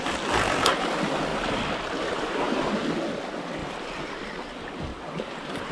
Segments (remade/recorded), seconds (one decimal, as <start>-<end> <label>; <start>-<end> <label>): 0.0-3.6 recorded; 3.6-4.1 remade; 4.1-4.9 recorded; 4.9-5.7 remade